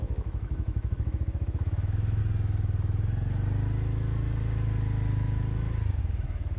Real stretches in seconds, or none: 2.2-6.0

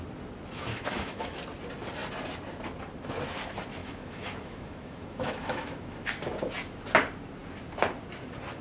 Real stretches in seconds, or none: 0.0-0.7; 1.4-3.8; 6.1-8.6

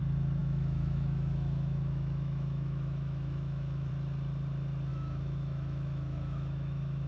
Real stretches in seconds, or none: 0.0-0.4; 3.9-4.9

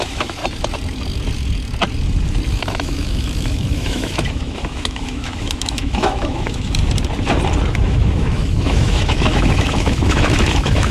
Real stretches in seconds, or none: 0.4-2.5; 6.8-7.7

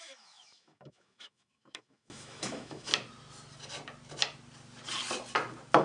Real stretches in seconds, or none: 2.9-5.8

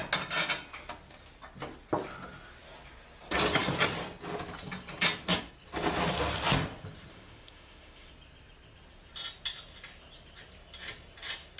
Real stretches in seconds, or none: 0.0-7.1; 8.1-11.6

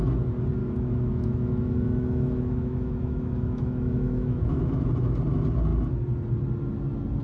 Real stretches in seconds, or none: 0.0-0.6; 4.9-7.2